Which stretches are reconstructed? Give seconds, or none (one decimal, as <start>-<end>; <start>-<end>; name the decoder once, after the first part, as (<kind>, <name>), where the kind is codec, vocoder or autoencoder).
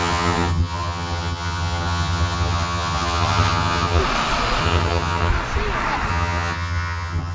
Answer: 0.0-4.0 (vocoder, HiFi-GAN); 4.6-5.3; 6.1-7.3